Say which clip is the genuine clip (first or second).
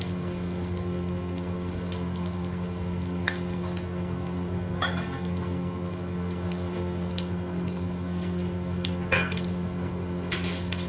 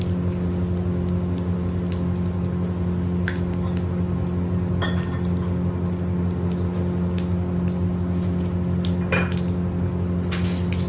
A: second